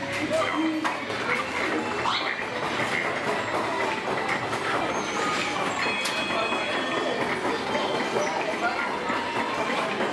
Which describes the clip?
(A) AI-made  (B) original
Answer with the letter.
B